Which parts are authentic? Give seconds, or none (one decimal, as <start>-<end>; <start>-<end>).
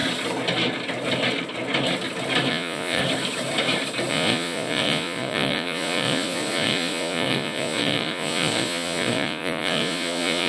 0.0-2.5; 3.0-4.1